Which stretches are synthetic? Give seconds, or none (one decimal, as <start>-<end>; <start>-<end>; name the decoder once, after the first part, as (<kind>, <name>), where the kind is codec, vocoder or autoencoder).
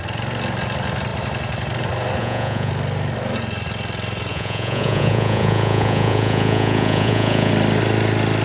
2.2-2.7 (vocoder, Vocos); 4.3-7.5